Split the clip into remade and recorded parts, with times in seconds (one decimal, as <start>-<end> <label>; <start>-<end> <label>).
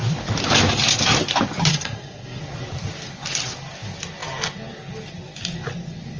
0.0-1.7 recorded; 1.7-2.4 remade; 2.4-6.2 recorded